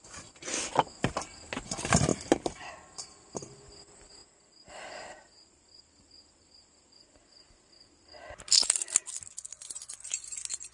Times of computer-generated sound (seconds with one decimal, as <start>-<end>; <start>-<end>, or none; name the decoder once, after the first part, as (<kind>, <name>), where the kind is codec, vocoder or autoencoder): none